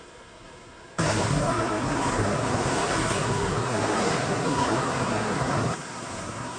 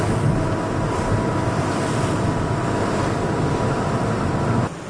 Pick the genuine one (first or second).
second